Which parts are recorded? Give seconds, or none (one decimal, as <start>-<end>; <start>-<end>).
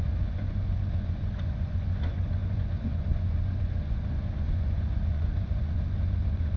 none